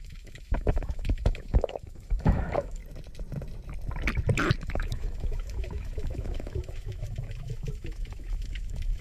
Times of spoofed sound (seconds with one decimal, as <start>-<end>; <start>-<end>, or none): 0.0-2.8; 4.6-9.0